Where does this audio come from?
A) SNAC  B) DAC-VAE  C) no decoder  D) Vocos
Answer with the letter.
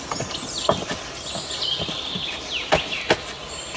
C